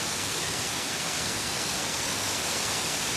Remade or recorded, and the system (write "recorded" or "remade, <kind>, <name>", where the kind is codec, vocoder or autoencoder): remade, codec, SNAC